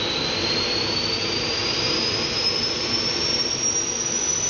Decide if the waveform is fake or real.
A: real